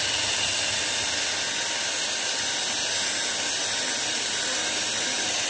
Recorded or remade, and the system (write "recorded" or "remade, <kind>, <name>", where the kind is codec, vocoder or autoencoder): recorded